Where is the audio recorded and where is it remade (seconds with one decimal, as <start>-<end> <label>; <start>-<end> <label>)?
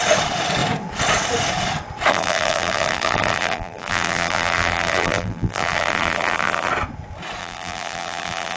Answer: 0.0-2.1 recorded; 2.1-6.7 remade; 6.7-7.4 recorded; 7.4-8.6 remade